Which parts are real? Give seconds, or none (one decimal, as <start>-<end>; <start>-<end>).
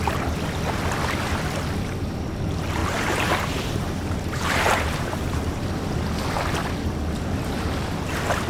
0.0-2.8; 5.5-8.5